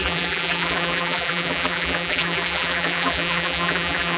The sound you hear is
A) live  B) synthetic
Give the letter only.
B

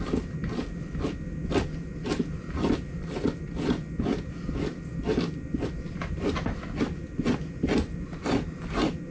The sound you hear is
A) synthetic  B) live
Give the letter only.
B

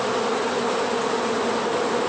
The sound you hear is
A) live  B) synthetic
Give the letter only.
A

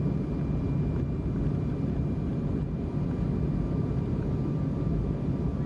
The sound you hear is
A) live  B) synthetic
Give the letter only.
A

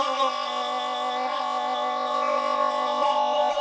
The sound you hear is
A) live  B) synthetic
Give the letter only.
B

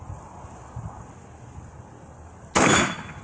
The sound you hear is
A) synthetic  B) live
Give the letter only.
B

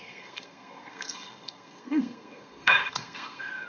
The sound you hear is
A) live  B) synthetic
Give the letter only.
B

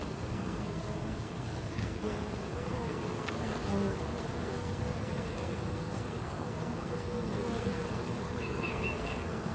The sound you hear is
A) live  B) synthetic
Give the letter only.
B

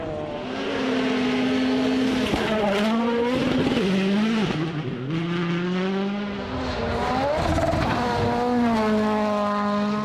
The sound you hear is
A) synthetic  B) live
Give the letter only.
B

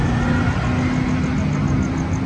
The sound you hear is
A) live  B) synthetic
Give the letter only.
A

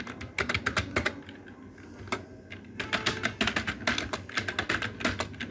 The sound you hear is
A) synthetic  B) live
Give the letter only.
B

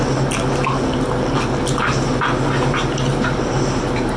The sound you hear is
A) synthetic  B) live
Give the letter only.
B